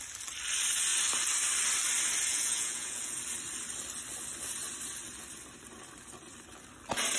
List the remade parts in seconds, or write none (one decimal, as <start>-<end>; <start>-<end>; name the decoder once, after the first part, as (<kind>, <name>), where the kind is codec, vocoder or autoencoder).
2.3-3.2 (vocoder, Vocos)